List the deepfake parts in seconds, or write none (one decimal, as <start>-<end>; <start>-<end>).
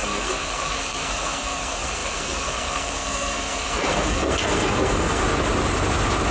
0.0-5.2